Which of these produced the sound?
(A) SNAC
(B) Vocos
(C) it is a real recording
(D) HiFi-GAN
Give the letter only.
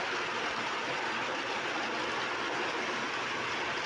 C